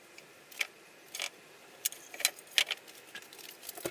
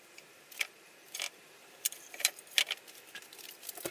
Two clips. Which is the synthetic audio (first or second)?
second